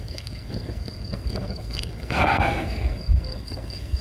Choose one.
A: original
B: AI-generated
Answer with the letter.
B